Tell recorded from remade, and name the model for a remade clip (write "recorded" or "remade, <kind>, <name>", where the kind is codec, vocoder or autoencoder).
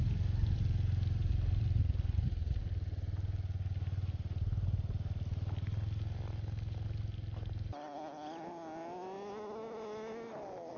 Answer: recorded